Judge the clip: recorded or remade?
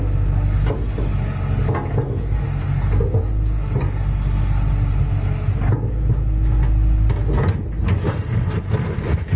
recorded